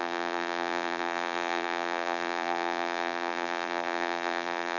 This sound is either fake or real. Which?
fake